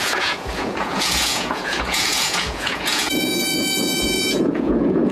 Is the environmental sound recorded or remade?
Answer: remade